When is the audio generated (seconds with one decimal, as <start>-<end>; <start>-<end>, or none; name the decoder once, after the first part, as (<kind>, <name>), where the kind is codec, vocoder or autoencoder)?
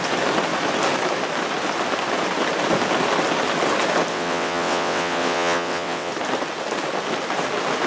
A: 4.1-6.1 (vocoder, WaveNeXt)